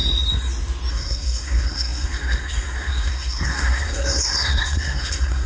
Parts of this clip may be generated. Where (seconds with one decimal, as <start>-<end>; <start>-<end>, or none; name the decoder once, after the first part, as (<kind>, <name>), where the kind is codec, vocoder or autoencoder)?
0.9-5.5 (codec, SNAC)